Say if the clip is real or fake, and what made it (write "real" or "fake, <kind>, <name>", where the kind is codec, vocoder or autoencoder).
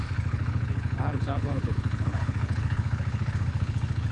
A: fake, codec, HILCodec